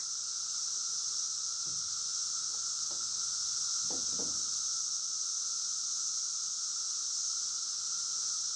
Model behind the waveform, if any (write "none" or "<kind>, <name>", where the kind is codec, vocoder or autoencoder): none